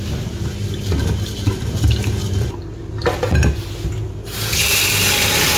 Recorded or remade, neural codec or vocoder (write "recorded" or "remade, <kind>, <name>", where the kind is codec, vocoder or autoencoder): recorded